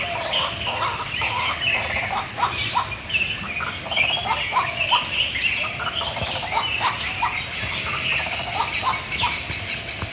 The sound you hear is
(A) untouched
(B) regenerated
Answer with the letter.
A